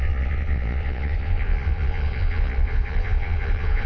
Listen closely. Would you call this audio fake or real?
fake